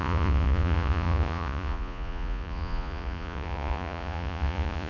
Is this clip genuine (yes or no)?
no